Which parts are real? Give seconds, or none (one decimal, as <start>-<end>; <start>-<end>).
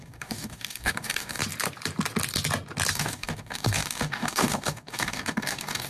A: 1.4-2.9